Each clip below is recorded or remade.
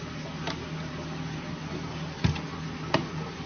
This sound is recorded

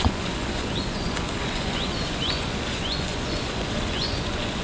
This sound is remade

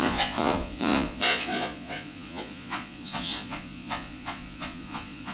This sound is remade